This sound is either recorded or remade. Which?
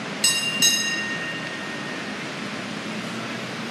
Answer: recorded